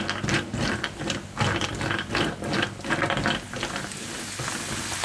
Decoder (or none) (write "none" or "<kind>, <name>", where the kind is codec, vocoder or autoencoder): none